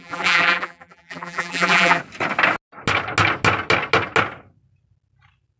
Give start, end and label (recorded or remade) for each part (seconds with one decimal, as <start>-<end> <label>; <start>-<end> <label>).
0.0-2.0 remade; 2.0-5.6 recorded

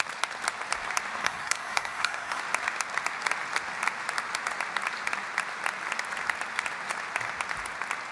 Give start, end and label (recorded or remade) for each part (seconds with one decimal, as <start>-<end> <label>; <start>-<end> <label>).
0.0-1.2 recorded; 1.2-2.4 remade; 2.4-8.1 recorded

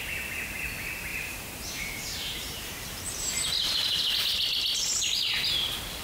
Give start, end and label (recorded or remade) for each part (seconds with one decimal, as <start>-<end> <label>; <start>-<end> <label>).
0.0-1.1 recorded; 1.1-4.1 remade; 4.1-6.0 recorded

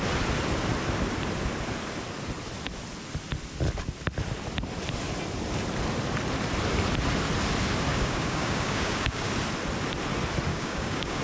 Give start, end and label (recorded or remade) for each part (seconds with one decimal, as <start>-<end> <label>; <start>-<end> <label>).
0.0-7.9 recorded; 7.9-9.3 remade; 9.3-10.5 recorded; 10.5-11.2 remade

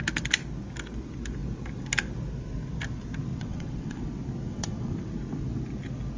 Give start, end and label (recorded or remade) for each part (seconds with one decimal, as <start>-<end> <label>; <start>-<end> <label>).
0.0-3.3 recorded; 3.3-4.1 remade; 4.1-4.5 recorded; 4.5-5.1 remade; 5.1-6.2 recorded

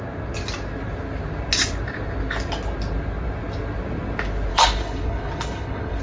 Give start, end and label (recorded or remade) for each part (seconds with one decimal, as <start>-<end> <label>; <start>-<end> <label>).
0.0-4.5 recorded; 4.5-6.0 remade